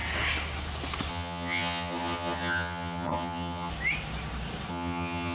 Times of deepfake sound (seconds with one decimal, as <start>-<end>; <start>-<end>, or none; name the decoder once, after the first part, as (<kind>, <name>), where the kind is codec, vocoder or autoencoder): 1.1-3.7 (vocoder, HiFi-GAN); 4.7-5.3